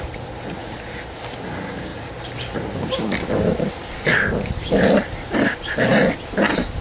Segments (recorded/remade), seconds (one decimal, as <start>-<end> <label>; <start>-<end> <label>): 0.0-0.6 recorded; 0.6-1.3 remade; 1.3-1.9 recorded; 1.9-6.0 remade; 6.0-6.8 recorded

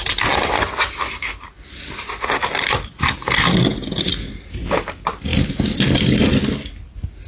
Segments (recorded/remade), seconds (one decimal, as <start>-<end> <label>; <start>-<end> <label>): 0.0-7.3 recorded

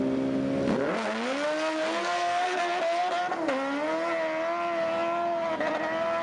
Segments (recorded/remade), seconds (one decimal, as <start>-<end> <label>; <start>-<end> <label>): 0.0-2.0 recorded; 2.0-2.6 remade; 2.6-6.2 recorded

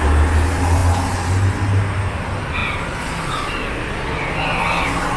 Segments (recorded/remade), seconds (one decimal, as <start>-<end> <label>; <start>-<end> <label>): 0.0-5.2 recorded

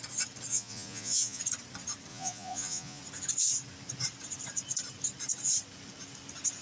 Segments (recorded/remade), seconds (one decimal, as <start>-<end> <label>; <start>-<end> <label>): 0.0-0.5 recorded; 0.5-1.4 remade; 1.4-2.1 recorded; 2.1-3.0 remade; 3.0-6.6 recorded

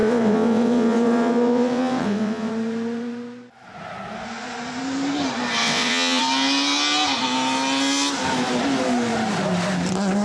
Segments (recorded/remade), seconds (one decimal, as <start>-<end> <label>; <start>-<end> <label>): 0.0-2.5 remade; 2.5-5.6 recorded; 5.6-6.2 remade; 6.2-10.2 recorded

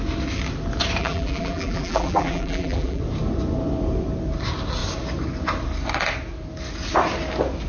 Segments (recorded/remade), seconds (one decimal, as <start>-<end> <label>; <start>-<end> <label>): 0.0-1.0 recorded; 1.0-3.0 remade; 3.0-7.7 recorded